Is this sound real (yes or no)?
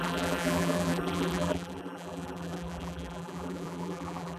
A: no